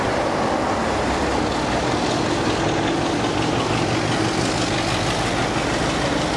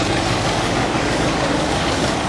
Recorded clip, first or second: first